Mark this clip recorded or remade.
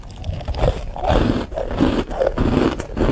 recorded